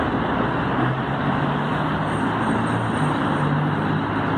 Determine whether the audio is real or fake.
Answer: real